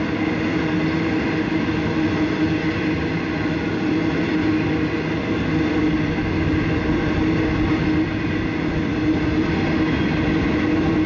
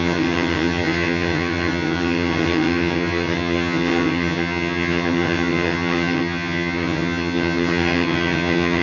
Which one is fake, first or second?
second